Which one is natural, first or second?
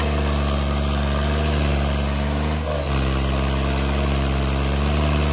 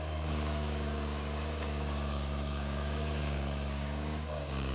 first